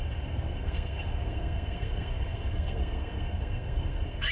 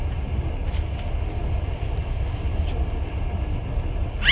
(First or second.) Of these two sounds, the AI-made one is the first